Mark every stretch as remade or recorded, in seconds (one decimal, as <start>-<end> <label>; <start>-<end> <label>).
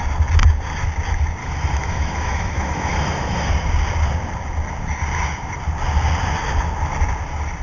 0.0-1.4 recorded; 1.4-3.5 remade; 3.5-7.6 recorded